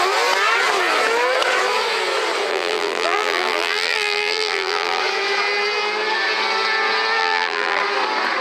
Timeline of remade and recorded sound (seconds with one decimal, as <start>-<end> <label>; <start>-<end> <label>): 0.0-2.5 recorded; 2.5-5.0 remade; 5.0-7.2 recorded; 7.2-7.8 remade; 7.8-8.4 recorded

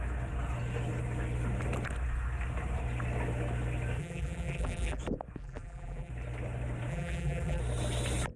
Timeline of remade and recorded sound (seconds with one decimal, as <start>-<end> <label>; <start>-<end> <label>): 0.0-4.0 recorded; 4.0-5.0 remade; 5.0-5.4 recorded; 5.4-6.1 remade; 6.1-6.9 recorded; 6.9-7.6 remade; 7.6-8.4 recorded

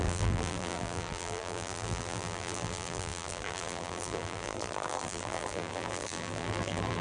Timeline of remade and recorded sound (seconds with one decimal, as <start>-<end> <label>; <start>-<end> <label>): 0.0-7.0 remade